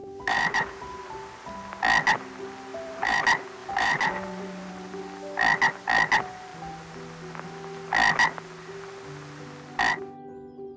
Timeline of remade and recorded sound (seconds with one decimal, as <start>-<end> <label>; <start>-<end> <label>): 0.0-1.0 remade; 1.0-2.7 recorded; 2.7-3.2 remade; 3.2-3.6 recorded; 3.6-4.7 remade; 4.7-10.8 recorded